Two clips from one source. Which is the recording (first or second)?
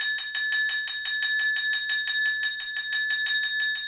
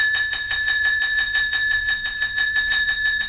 first